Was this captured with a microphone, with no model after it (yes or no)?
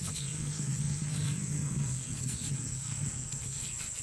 no